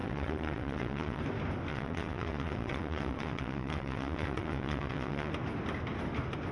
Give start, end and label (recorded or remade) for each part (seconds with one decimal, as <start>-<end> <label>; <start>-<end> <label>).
0.0-1.2 remade; 1.2-1.7 recorded; 1.7-5.3 remade; 5.3-6.5 recorded

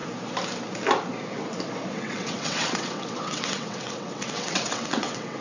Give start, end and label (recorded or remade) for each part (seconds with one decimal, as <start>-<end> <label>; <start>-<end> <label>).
0.0-1.9 recorded; 1.9-5.4 remade

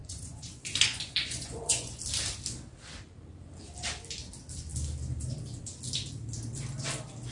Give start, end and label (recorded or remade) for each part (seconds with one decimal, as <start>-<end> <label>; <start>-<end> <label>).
0.0-2.0 remade; 2.0-7.3 recorded

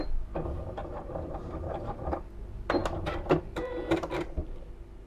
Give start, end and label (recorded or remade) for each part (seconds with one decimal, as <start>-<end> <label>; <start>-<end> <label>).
0.0-0.8 recorded; 0.8-2.3 remade; 2.3-5.1 recorded